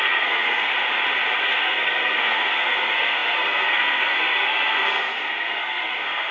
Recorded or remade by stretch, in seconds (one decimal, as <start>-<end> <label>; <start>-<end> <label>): 0.0-0.7 remade; 0.7-1.4 recorded; 1.4-6.3 remade